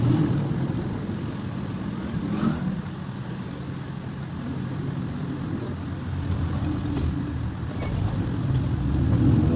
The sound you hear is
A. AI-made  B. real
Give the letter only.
B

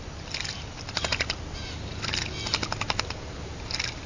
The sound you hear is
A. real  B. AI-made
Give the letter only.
A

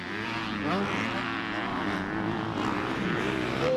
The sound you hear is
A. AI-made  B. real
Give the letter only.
B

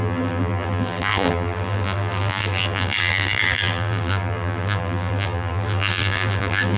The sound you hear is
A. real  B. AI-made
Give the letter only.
B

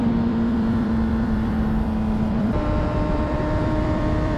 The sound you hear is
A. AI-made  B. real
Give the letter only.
A